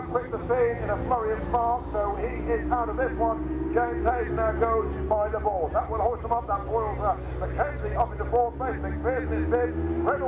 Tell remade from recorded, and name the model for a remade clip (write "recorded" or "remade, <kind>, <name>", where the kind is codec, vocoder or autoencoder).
recorded